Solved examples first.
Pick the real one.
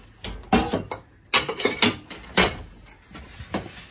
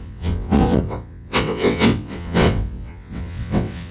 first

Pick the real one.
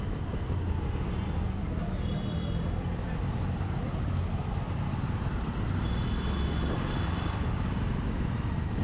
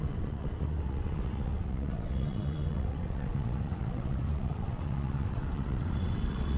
first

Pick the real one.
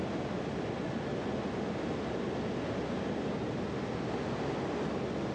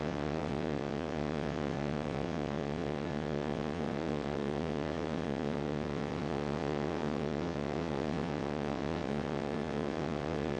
first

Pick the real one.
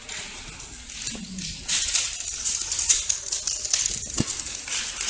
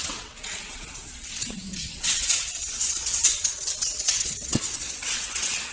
first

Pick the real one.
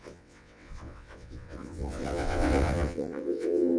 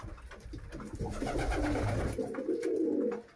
second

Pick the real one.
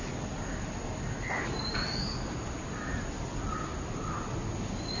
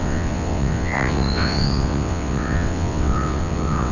first